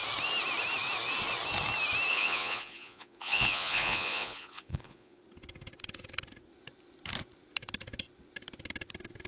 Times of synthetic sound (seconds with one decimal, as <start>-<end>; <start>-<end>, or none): 2.1-5.2